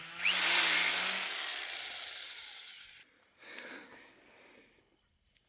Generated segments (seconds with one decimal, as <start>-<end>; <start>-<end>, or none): none